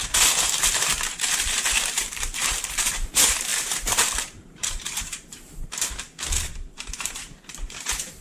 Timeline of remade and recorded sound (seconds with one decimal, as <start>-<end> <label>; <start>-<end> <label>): 0.0-8.2 remade